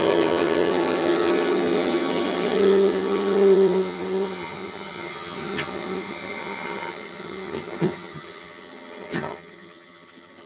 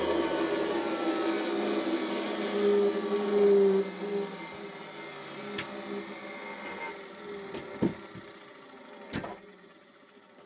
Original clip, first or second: second